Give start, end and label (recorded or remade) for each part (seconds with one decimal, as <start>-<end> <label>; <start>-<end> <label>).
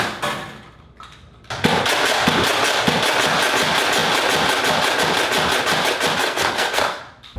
0.0-6.2 recorded; 6.2-7.0 remade; 7.0-7.4 recorded